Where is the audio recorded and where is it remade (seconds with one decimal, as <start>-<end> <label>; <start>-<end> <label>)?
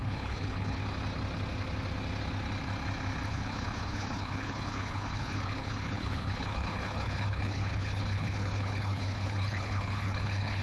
0.0-0.8 remade; 0.8-3.3 recorded; 3.3-10.6 remade